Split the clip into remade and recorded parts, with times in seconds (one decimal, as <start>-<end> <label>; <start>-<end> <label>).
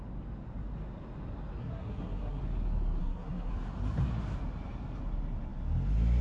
0.0-1.6 recorded; 1.6-2.4 remade; 2.4-3.0 recorded; 3.0-3.5 remade; 3.5-6.2 recorded